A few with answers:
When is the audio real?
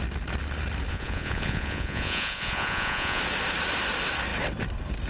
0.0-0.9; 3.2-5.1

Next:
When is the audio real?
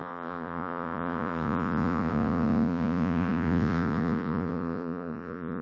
none